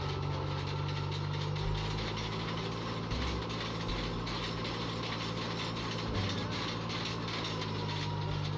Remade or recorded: recorded